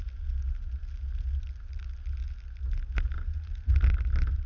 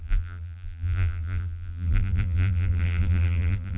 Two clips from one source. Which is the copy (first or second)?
second